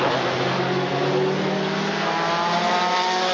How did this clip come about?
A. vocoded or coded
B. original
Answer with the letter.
B